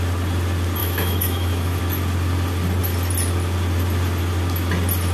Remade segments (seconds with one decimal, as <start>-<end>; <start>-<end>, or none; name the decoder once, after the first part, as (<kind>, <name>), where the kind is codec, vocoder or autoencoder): 0.8-1.8 (autoencoder, DAC-VAE)

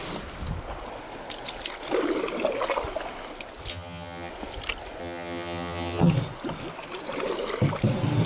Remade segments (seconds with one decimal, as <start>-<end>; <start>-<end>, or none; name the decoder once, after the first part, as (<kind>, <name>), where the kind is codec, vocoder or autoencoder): 3.7-4.3 (vocoder, HiFi-GAN); 5.0-6.1

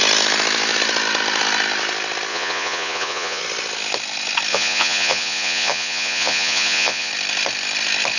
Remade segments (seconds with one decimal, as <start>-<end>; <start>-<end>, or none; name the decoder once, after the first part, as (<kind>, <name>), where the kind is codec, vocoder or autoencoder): 2.3-3.4 (vocoder, Vocos); 4.5-7.1

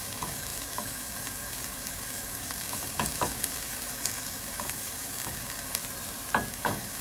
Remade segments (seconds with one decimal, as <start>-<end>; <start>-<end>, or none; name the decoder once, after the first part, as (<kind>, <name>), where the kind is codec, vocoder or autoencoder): 0.0-5.8 (codec, DAC); 6.5-7.0

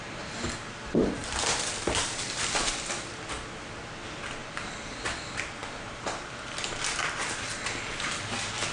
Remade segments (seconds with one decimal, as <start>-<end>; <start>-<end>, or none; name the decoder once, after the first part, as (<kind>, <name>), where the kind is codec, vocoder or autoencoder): none

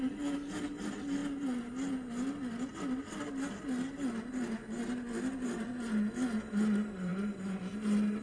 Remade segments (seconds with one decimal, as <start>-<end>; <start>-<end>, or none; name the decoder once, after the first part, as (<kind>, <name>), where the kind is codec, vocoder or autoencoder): none

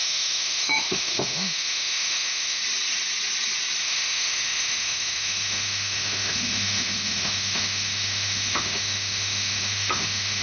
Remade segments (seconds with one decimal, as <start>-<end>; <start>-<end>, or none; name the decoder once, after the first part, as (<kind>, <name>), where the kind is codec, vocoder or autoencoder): 0.0-2.6 (autoencoder, DAC-VAE); 3.8-10.4